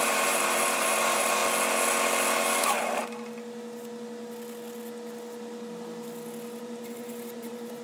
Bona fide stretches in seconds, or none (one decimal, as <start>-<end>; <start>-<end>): 1.4-2.6; 3.0-6.6

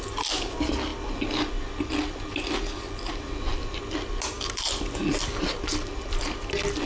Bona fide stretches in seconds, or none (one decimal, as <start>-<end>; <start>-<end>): 0.0-6.9

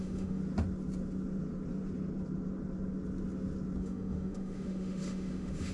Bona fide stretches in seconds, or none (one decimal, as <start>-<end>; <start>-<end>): 0.4-3.8

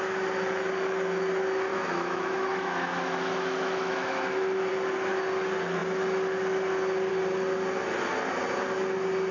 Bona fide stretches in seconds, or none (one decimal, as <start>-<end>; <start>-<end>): 0.0-1.7; 4.7-9.3

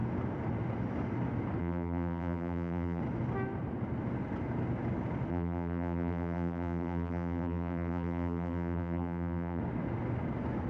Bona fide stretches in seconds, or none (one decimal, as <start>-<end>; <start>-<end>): 0.0-1.6; 3.0-5.3; 9.6-10.7

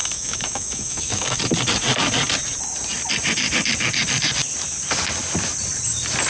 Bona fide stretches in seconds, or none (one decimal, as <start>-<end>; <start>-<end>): 1.4-6.3